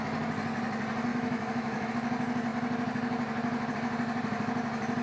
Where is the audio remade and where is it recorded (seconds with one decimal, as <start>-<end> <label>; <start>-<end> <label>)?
0.0-1.1 recorded; 1.1-1.9 remade; 1.9-5.0 recorded

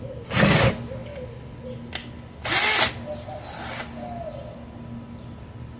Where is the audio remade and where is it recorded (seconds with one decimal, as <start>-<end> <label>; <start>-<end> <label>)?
0.0-5.8 recorded

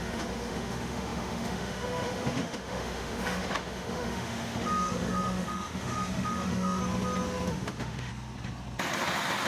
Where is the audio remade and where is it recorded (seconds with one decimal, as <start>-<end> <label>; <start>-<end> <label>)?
0.0-6.8 remade; 6.8-7.5 recorded; 7.5-8.1 remade; 8.1-9.5 recorded

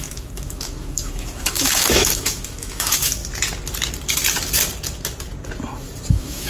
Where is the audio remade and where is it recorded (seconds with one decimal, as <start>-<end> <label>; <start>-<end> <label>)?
0.0-3.2 remade; 3.2-6.1 recorded; 6.1-6.5 remade

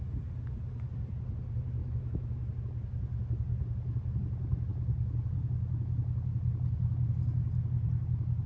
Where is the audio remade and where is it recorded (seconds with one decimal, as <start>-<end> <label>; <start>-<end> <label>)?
0.0-1.8 recorded; 1.8-2.5 remade; 2.5-8.5 recorded

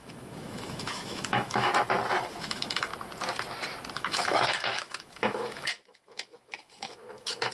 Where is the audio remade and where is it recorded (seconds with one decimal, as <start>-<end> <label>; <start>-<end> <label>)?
0.0-1.7 remade; 1.7-2.4 recorded; 2.4-2.9 remade; 2.9-3.9 recorded; 3.9-7.5 remade